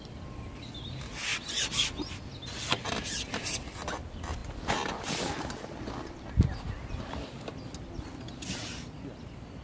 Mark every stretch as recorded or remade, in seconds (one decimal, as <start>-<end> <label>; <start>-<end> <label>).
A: 0.0-9.6 recorded